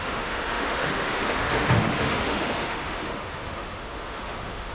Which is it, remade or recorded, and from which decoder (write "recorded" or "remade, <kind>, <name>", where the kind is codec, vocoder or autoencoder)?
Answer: remade, autoencoder, DAC-VAE